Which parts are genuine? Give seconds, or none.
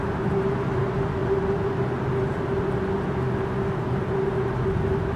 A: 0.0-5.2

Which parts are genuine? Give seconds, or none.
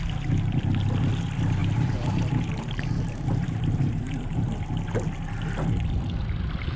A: 0.0-1.6; 4.6-6.8